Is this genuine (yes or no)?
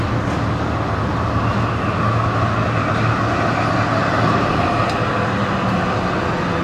yes